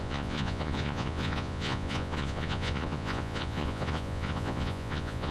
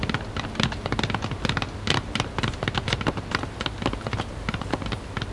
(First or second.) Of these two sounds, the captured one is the second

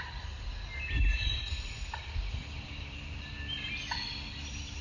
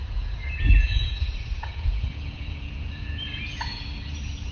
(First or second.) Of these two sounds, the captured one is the first